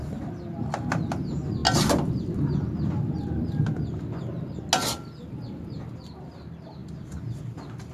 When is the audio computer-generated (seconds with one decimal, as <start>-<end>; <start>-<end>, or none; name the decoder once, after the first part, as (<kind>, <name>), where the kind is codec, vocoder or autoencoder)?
none